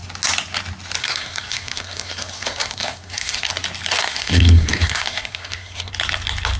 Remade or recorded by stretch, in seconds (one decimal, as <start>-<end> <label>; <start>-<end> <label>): 0.0-1.0 recorded; 1.0-3.5 remade; 3.5-4.0 recorded; 4.0-5.9 remade; 5.9-6.6 recorded